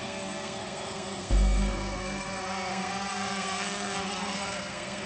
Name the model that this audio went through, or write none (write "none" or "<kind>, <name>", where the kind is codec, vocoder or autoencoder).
codec, SNAC